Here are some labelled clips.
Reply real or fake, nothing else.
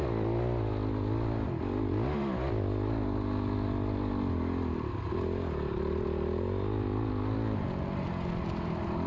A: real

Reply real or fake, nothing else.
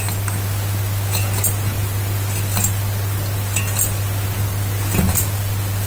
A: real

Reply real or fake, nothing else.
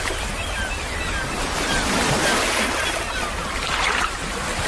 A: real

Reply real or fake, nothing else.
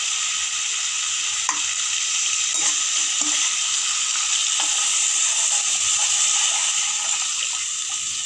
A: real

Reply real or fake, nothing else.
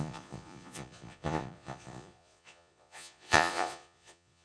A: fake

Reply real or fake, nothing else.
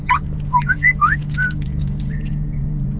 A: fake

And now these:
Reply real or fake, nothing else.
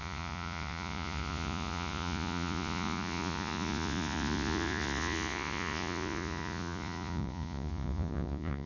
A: fake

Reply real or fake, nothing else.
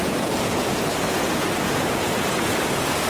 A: fake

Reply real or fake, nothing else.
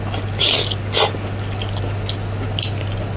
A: real